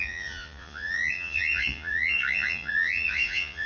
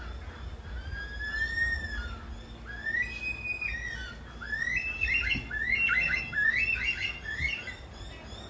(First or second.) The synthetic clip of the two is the first